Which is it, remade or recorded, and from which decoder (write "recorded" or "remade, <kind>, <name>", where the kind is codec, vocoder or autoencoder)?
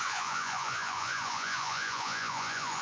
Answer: remade, vocoder, Vocos